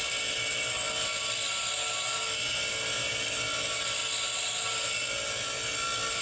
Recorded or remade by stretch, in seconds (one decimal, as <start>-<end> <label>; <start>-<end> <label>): 0.0-6.2 recorded